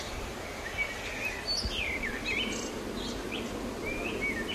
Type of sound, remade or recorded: recorded